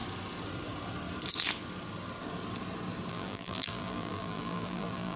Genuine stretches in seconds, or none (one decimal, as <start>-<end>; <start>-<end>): 0.0-3.1